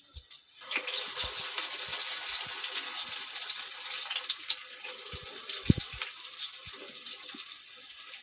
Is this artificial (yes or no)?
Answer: no